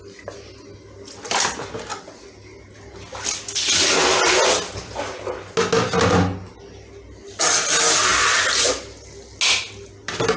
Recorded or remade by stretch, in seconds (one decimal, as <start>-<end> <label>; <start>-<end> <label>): 0.0-10.4 recorded